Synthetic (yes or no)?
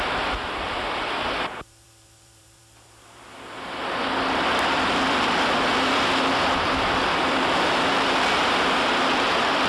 yes